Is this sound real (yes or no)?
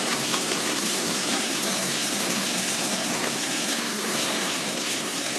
no